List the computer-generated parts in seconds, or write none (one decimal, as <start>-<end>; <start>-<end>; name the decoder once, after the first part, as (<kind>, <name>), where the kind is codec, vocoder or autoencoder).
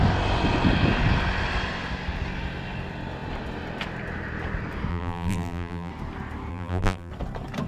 4.9-5.9 (vocoder, BigVGAN v2); 6.5-7.1